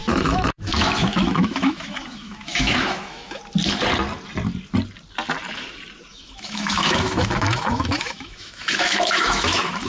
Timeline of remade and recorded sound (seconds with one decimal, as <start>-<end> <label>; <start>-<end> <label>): 0.0-3.4 remade; 3.4-6.1 recorded; 6.1-9.9 remade